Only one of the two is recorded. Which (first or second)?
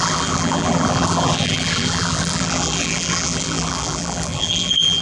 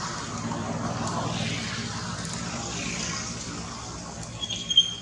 second